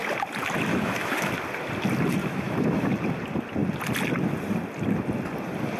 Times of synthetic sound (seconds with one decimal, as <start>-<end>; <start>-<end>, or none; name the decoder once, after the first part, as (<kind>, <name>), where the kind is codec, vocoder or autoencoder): 0.7-1.3 (autoencoder, DAC-VAE); 2.2-2.8